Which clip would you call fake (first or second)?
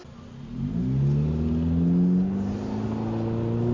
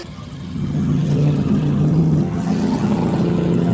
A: second